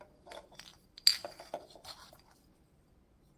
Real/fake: real